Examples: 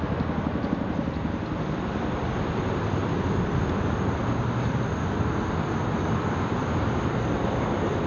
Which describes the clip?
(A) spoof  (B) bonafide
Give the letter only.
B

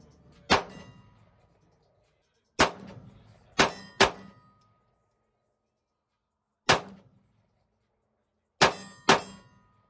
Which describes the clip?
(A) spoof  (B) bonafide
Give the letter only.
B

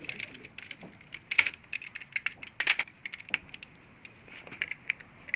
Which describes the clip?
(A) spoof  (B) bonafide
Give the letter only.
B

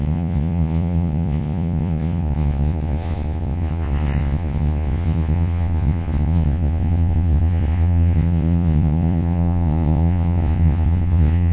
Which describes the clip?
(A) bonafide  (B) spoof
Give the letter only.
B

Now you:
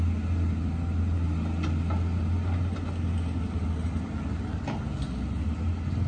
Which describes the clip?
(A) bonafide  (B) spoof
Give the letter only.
A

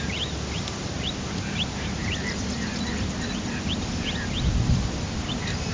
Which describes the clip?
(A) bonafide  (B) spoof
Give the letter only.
A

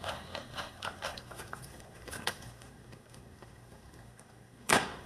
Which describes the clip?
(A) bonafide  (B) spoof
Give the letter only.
B